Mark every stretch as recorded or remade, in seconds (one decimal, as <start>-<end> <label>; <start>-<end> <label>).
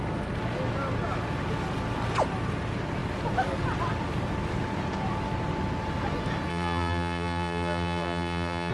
0.0-6.5 recorded; 6.5-8.7 remade